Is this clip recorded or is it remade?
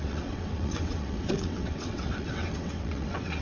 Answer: remade